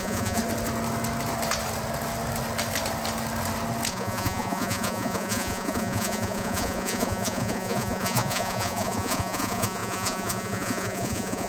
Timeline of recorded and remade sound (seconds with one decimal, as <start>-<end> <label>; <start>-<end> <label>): 0.0-0.4 remade; 0.4-3.9 recorded; 3.9-11.5 remade